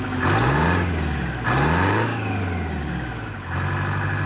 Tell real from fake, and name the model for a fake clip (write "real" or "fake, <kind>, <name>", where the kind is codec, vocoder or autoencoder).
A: real